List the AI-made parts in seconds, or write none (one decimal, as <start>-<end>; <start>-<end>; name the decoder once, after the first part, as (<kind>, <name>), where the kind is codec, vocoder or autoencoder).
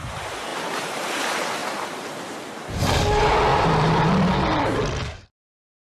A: 0.5-1.0 (vocoder, BigVGAN v2); 1.6-3.0; 3.5-4.1